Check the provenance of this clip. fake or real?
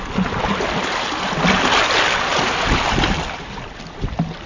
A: real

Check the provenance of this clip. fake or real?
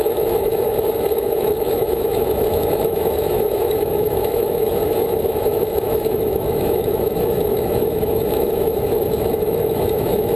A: fake